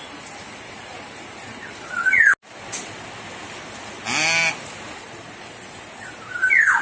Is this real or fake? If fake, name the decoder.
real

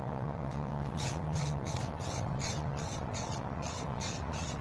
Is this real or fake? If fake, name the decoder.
fake, vocoder, WaveNeXt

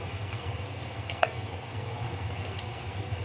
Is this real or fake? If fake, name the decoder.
fake, codec, SNAC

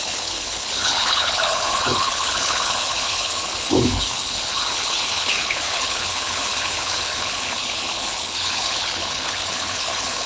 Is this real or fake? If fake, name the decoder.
fake, codec, HILCodec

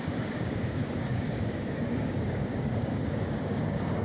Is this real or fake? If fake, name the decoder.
fake, codec, DAC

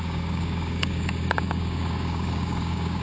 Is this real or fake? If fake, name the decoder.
fake, codec, DAC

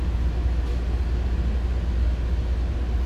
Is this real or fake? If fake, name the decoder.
real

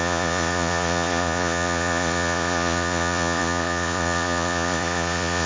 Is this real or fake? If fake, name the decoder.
fake, vocoder, Vocos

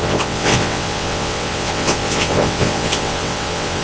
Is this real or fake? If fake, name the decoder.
fake, vocoder, WaveNeXt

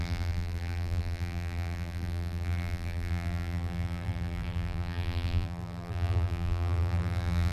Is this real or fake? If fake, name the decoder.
fake, vocoder, BigVGAN v2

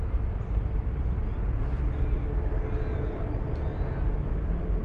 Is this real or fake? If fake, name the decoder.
real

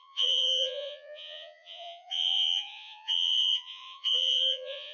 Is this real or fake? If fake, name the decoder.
fake, vocoder, Vocos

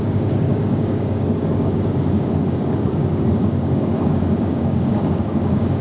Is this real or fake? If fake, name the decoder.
fake, codec, DAC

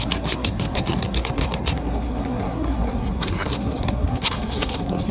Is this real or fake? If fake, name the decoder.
fake, codec, SNAC